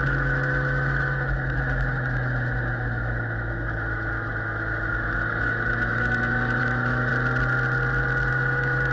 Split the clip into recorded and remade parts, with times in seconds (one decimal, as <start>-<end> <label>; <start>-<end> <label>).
0.0-7.1 remade; 7.1-8.3 recorded; 8.3-8.9 remade